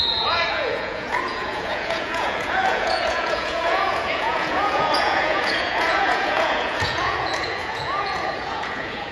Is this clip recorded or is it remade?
remade